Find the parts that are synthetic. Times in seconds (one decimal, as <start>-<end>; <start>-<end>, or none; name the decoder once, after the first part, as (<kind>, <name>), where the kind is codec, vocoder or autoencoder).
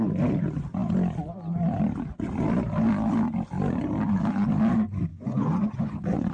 5.1-6.3 (vocoder, Vocos)